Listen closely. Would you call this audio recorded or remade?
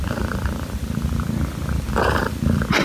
recorded